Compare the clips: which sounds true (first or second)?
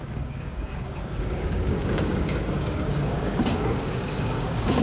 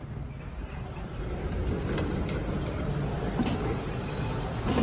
second